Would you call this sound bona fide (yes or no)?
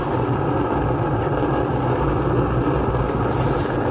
yes